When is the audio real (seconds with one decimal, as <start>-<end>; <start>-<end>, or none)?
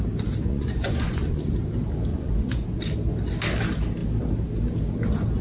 0.0-0.5; 1.5-2.1; 2.8-5.4